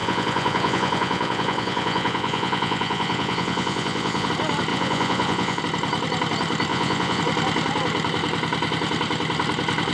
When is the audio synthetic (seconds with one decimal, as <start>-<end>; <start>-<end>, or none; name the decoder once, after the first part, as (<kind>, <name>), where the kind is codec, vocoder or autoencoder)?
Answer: 0.0-4.3 (vocoder, Vocos); 4.7-5.6; 6.7-7.2